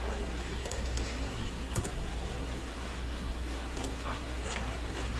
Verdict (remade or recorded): remade